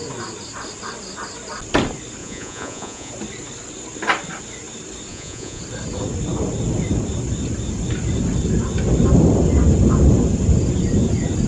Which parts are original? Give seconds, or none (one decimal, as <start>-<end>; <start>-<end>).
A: 0.0-2.2; 3.1-5.1; 5.6-11.5

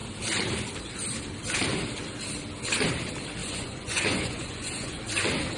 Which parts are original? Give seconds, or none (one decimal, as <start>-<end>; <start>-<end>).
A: 0.0-3.4; 5.0-5.6

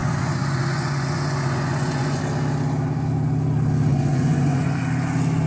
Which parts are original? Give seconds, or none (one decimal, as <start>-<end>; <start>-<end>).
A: 2.2-4.1; 4.8-5.5

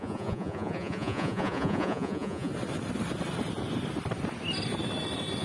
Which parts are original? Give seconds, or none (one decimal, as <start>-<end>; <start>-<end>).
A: 2.5-5.4

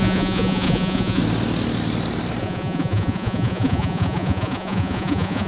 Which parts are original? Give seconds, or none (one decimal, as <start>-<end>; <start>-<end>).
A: 1.2-2.4

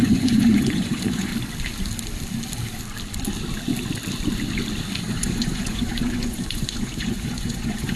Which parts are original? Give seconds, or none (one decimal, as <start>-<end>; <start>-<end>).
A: 1.3-5.0

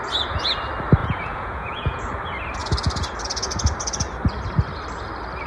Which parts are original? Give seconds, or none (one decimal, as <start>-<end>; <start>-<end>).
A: 0.0-1.0; 2.0-5.5